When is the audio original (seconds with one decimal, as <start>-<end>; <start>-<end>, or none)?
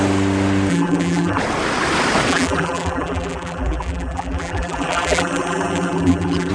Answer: 0.0-0.7; 1.4-2.3